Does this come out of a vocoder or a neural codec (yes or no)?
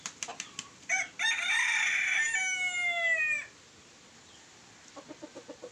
no